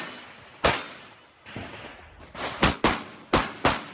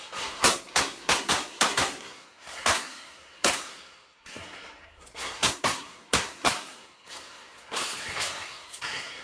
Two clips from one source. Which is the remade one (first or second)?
second